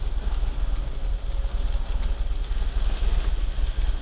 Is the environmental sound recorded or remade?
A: recorded